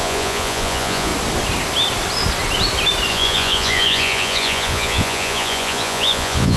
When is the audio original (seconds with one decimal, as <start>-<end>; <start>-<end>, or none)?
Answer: 1.1-3.1